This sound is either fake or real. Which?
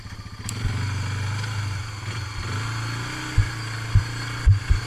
real